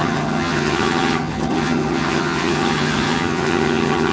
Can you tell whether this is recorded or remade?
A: remade